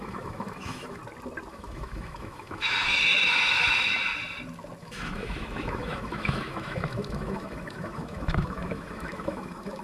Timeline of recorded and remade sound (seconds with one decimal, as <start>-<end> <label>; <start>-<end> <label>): 0.0-1.0 remade; 1.0-1.5 recorded; 1.5-4.0 remade; 4.0-4.8 recorded; 4.8-9.8 remade